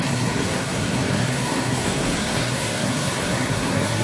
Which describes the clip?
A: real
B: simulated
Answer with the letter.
B